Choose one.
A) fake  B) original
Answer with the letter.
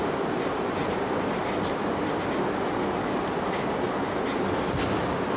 B